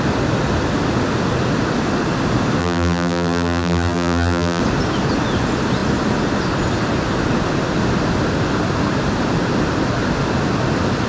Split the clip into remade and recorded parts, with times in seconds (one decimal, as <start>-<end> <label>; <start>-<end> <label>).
0.0-2.6 recorded; 2.6-4.6 remade; 4.6-11.1 recorded